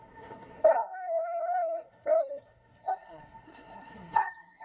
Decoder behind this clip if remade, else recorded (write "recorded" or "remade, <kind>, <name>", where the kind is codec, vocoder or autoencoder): remade, codec, SNAC